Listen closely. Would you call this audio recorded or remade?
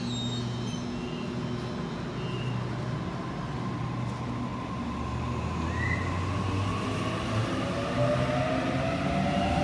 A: recorded